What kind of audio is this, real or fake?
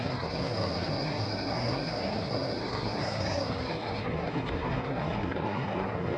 fake